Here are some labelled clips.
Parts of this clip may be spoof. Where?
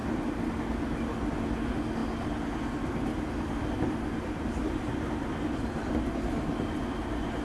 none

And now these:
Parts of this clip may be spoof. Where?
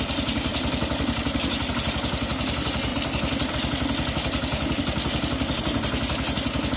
0.5-1.7 (vocoder, BigVGAN v2); 2.9-3.5; 4.5-5.6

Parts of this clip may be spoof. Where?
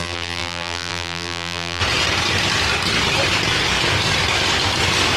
0.0-1.8 (vocoder, BigVGAN v2)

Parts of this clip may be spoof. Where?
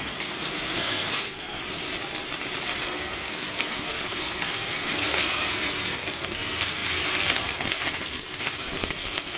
0.0-1.6 (codec, SNAC); 2.8-9.4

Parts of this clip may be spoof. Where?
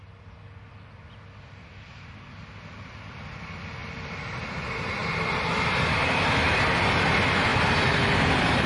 3.8-4.5 (vocoder, BigVGAN v2)